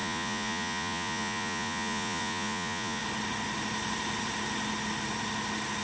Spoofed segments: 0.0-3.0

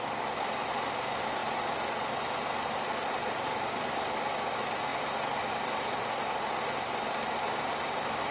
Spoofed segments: none

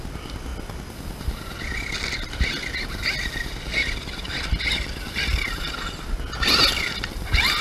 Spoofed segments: none

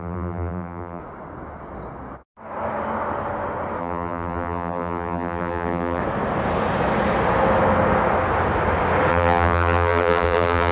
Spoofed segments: 0.0-1.0; 3.8-6.0; 9.1-10.7

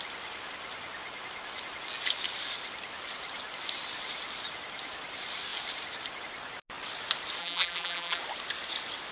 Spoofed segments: 7.4-8.2